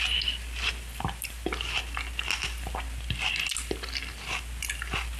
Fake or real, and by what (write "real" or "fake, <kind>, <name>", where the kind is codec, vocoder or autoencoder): real